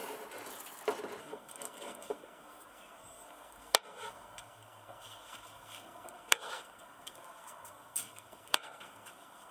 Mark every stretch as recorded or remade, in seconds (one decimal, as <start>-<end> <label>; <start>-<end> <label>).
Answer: 0.0-1.2 recorded; 1.2-9.5 remade